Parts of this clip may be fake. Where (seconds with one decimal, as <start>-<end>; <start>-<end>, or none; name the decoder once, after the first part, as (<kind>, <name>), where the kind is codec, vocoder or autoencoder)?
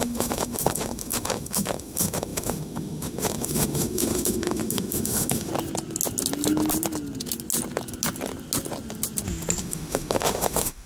0.0-5.5 (autoencoder, DAC-VAE); 9.6-10.9